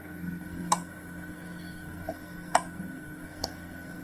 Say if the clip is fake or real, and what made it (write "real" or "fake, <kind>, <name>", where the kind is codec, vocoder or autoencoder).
fake, codec, SNAC